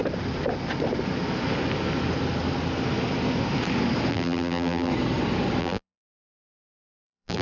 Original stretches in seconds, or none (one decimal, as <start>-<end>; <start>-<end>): 0.0-4.1; 4.9-5.6

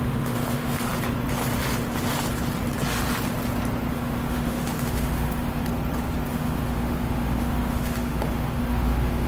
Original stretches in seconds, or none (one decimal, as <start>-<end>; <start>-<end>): 0.9-3.9; 5.6-6.3

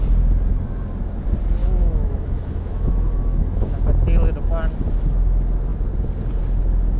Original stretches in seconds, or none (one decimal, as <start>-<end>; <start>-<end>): 0.0-1.6; 3.7-7.0

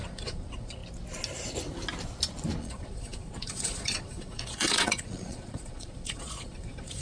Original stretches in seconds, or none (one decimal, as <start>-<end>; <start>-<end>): 0.8-2.6

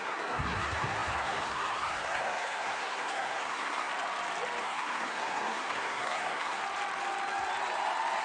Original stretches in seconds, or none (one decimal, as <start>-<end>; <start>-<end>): 3.9-4.6; 6.6-8.2

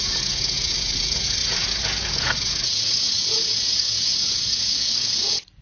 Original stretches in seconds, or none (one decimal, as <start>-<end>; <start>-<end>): none

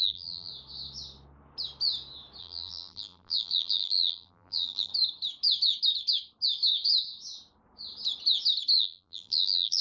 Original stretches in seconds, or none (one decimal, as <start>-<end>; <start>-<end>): 0.5-2.4; 4.9-8.8